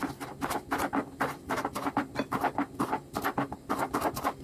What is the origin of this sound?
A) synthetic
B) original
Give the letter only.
A